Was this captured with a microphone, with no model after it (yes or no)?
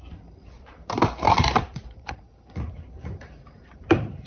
no